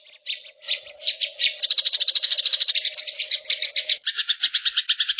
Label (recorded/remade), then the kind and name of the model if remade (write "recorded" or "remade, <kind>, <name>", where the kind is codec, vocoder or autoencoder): recorded